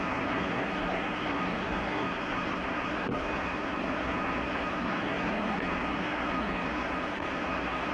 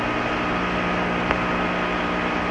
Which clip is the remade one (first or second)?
first